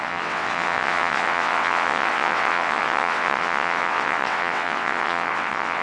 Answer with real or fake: fake